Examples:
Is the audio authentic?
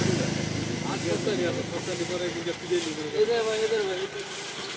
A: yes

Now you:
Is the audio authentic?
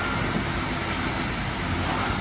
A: yes